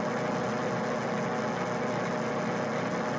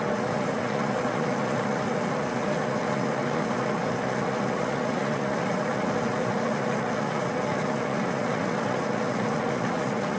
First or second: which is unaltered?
first